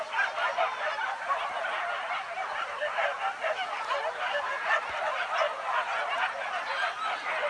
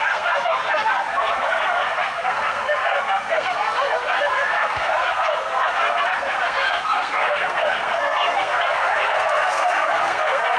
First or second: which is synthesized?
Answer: second